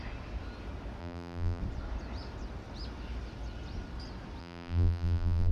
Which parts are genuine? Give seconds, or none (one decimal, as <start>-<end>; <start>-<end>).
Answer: 0.0-1.0; 1.6-4.4